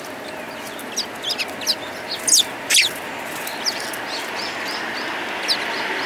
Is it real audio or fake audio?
real